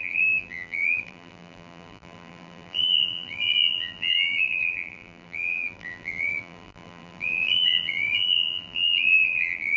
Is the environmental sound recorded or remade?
remade